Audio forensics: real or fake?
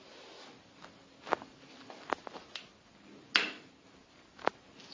real